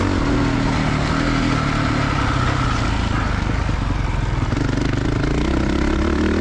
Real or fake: real